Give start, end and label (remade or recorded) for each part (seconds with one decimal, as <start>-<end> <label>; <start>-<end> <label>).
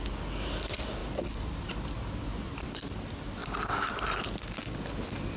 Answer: 0.0-1.0 recorded; 1.0-1.7 remade; 1.7-5.4 recorded